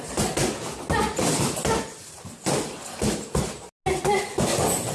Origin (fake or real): real